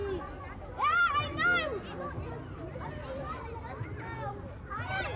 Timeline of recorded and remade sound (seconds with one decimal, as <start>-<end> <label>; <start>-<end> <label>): 0.0-5.2 recorded